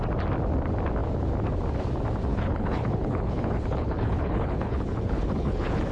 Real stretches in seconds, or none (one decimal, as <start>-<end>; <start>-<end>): 0.0-2.3